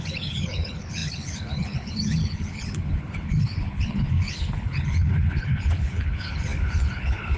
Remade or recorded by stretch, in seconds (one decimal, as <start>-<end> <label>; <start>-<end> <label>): 0.0-7.4 remade